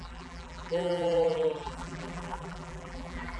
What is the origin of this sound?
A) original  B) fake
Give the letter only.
B